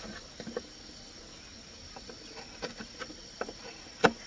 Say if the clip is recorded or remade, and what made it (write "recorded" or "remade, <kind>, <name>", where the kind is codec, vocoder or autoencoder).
recorded